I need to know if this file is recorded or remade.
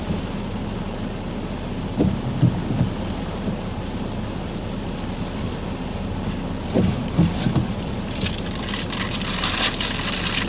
recorded